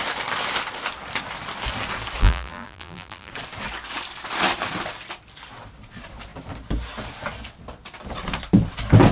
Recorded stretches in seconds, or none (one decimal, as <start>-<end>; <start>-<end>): 0.0-2.2; 3.3-9.1